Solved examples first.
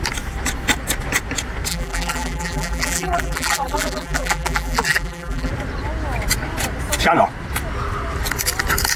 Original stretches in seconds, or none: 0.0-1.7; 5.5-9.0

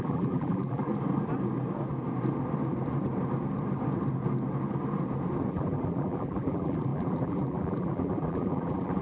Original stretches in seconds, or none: 0.9-5.5

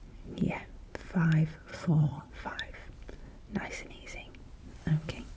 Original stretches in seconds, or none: 0.0-1.7; 2.3-5.4

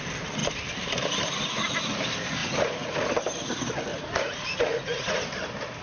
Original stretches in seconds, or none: 0.0-2.4; 3.0-3.9; 5.2-5.8

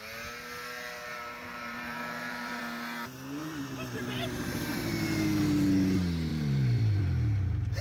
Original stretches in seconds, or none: 0.0-1.1; 2.6-3.4; 4.9-6.3; 7.0-7.8